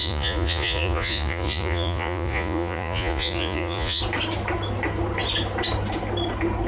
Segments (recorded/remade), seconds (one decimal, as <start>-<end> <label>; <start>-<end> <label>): 0.0-4.0 remade; 4.0-6.7 recorded